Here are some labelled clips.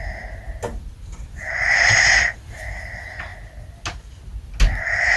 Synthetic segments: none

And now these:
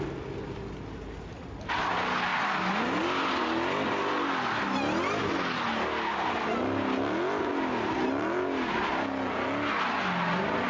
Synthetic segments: none

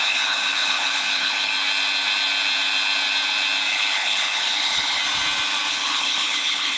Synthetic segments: 0.0-1.5 (codec, HILCodec); 3.7-5.0; 5.7-6.8

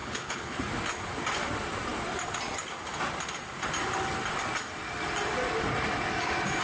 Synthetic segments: 0.0-0.6 (codec, HILCodec)

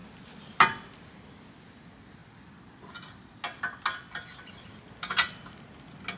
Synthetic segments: none

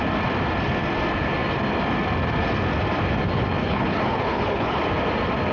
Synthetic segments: 3.6-4.8 (codec, HILCodec)